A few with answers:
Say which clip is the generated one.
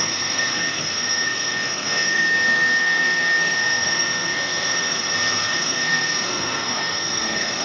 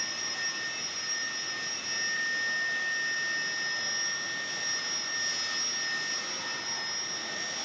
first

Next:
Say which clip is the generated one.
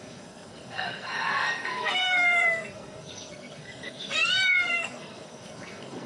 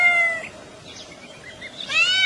first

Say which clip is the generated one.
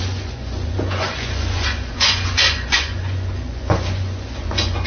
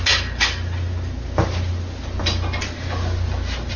first